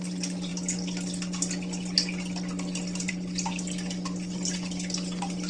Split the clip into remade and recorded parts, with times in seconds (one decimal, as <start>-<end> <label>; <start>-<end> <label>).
0.0-5.5 recorded